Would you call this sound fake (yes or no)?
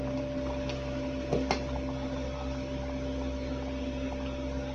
no